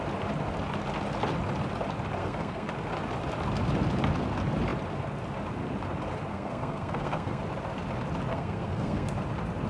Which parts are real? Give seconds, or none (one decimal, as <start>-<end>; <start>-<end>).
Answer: 0.0-2.2; 2.7-6.3; 7.4-8.3; 9.1-9.7